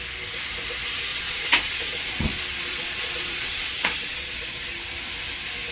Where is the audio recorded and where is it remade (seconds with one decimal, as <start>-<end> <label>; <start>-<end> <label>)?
0.0-1.1 recorded; 1.1-4.5 remade; 4.5-5.7 recorded